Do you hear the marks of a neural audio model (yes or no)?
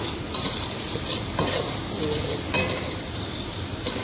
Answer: yes